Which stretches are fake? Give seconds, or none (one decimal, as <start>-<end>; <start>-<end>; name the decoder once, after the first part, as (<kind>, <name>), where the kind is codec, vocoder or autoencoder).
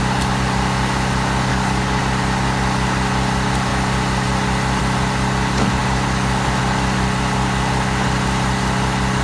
1.5-2.0 (codec, DAC)